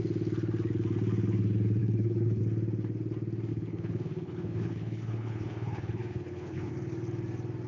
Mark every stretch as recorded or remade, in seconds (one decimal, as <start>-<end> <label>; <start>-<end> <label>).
0.0-1.8 recorded; 1.8-2.4 remade; 2.4-3.5 recorded; 3.5-6.7 remade; 6.7-7.7 recorded